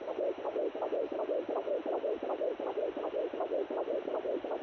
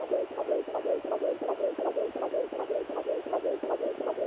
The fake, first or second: second